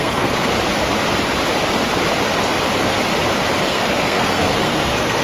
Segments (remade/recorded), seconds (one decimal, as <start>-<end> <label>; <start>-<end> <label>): 0.0-0.5 remade; 0.5-3.6 recorded; 3.6-5.2 remade